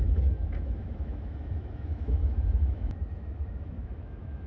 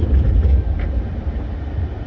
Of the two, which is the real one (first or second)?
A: second